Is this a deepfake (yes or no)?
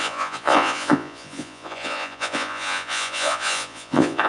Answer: yes